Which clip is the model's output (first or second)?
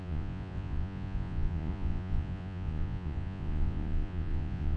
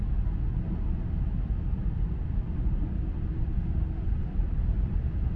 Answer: first